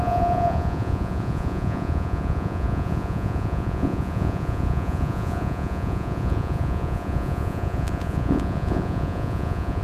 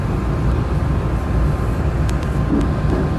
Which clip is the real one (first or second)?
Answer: second